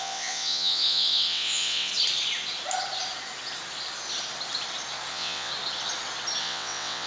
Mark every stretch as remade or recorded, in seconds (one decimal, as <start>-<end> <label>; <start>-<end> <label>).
0.0-1.9 remade; 1.9-5.1 recorded; 5.1-5.5 remade; 5.5-6.4 recorded; 6.4-7.1 remade